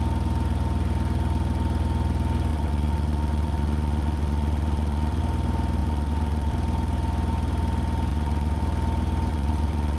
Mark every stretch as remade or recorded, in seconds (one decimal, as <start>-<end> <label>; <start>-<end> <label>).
0.0-2.5 recorded; 2.5-5.2 remade; 5.2-5.8 recorded; 5.8-6.5 remade; 6.5-8.1 recorded; 8.1-8.6 remade; 8.6-9.3 recorded; 9.3-10.0 remade